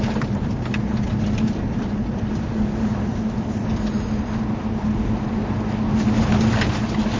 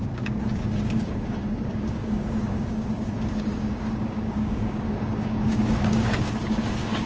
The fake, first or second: second